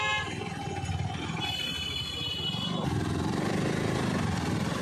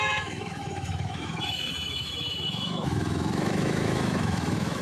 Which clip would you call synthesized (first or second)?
second